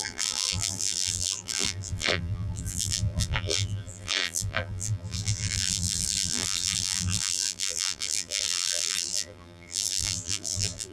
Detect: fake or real fake